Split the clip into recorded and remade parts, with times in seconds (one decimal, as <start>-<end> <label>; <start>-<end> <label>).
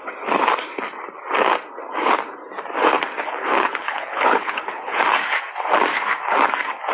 0.0-3.4 recorded; 3.4-5.0 remade; 5.0-6.9 recorded